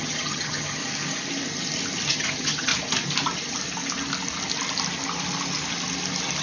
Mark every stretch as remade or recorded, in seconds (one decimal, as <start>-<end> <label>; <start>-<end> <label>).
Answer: 0.0-0.8 remade; 0.8-2.1 recorded; 2.1-2.7 remade; 2.7-6.4 recorded